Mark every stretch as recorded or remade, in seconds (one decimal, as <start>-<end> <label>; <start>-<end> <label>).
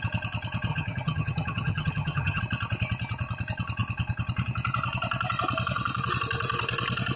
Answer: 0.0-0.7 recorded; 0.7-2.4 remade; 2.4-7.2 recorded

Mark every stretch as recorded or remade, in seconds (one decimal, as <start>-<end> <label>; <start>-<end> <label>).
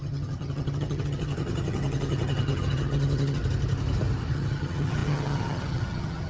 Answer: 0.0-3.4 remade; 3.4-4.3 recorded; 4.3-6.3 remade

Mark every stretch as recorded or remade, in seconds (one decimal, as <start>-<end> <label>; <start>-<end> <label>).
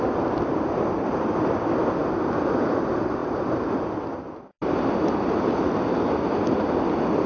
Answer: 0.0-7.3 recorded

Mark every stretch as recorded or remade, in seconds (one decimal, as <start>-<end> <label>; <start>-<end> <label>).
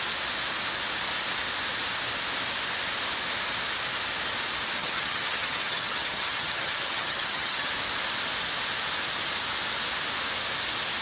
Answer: 0.0-4.8 recorded; 4.8-7.7 remade; 7.7-11.0 recorded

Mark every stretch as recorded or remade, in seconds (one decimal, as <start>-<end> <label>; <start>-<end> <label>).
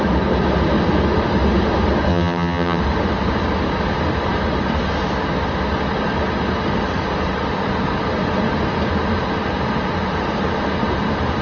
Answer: 0.0-2.1 recorded; 2.1-2.8 remade; 2.8-11.4 recorded